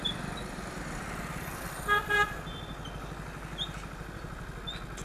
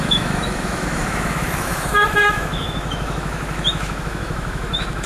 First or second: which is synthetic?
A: second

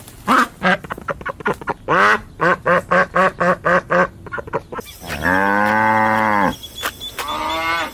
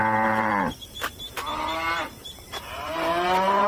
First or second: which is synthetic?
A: second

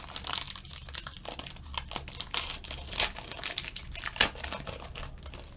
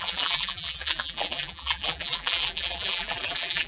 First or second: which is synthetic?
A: second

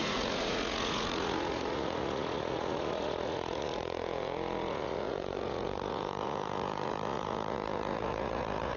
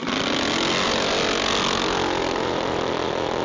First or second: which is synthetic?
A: first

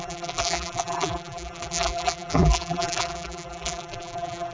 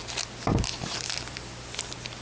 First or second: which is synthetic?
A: first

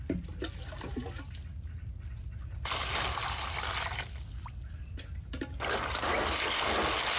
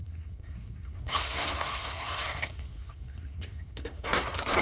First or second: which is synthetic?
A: second